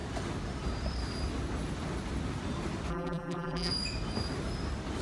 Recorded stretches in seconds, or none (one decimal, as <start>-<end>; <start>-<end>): 0.0-2.9; 3.7-5.0